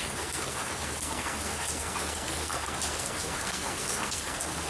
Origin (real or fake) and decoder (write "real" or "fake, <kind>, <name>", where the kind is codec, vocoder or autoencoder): fake, codec, SNAC